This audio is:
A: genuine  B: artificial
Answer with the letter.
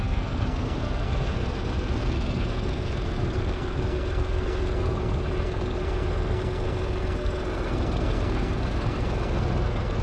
B